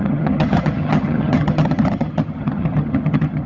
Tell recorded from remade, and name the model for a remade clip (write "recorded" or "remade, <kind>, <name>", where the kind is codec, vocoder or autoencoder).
remade, vocoder, HiFi-GAN